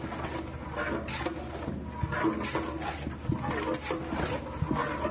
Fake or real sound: real